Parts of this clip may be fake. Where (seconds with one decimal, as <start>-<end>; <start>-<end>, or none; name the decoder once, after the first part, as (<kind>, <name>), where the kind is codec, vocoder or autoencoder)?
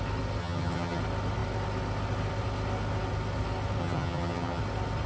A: 0.4-1.0 (vocoder, HiFi-GAN); 3.8-4.6